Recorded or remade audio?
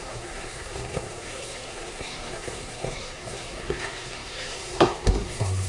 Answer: remade